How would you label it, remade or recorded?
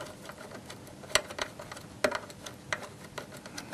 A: recorded